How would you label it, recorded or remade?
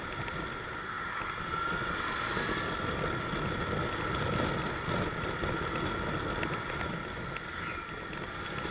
recorded